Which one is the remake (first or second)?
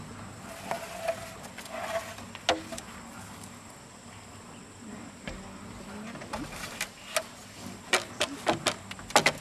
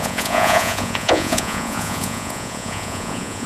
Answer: second